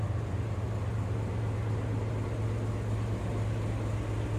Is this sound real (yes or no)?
yes